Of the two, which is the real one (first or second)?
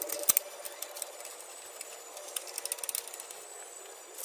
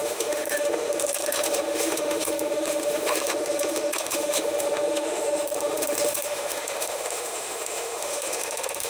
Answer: first